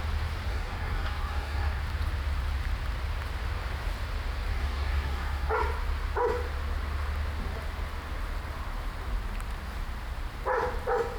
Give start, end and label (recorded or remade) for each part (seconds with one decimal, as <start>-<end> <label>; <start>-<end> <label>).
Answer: 0.0-0.5 recorded; 0.5-1.8 remade; 1.8-4.5 recorded; 4.5-5.6 remade; 5.6-11.2 recorded